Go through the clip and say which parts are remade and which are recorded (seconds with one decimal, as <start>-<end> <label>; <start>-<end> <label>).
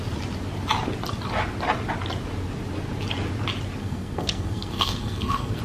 0.0-3.8 recorded; 3.8-5.6 remade